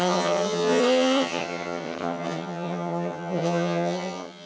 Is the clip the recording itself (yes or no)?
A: no